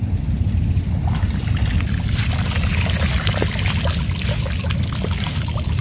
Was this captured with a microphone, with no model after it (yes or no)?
yes